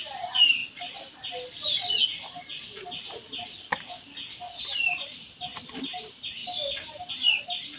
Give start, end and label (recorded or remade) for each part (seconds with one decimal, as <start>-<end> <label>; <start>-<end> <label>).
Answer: 0.0-0.6 remade; 0.6-4.6 recorded; 4.6-6.4 remade; 6.4-7.1 recorded; 7.1-7.8 remade